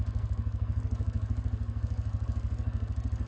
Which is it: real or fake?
fake